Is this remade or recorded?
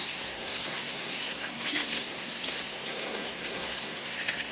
remade